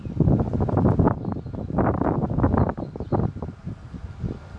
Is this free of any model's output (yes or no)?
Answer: yes